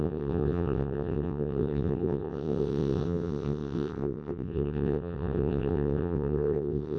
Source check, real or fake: fake